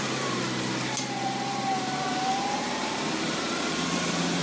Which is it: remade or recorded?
remade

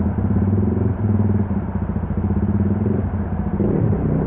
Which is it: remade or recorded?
remade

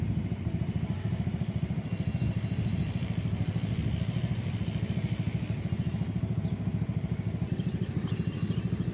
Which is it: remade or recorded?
recorded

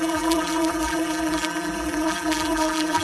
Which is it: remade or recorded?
remade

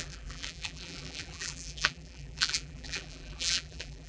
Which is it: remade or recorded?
remade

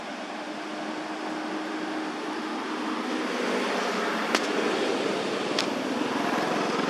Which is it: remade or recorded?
recorded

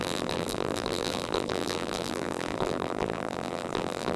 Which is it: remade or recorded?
remade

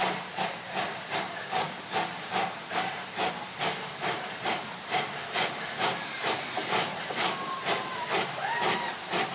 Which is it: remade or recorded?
remade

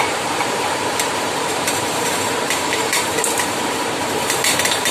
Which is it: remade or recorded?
remade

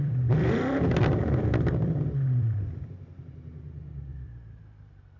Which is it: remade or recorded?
remade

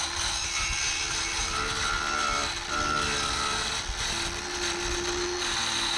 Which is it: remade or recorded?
recorded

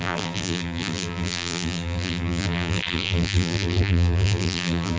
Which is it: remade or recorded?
remade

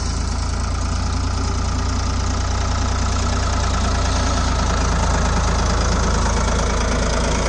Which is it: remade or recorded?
recorded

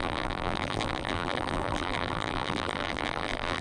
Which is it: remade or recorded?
remade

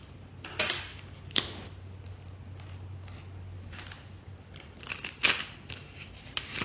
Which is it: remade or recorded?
recorded